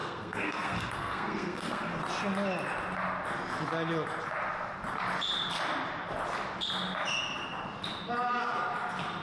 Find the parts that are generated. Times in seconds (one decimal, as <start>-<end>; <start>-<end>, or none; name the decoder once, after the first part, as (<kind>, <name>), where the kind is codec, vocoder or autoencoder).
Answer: 0.0-2.0 (codec, SNAC)